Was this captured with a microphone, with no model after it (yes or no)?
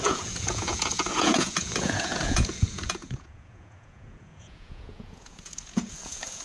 no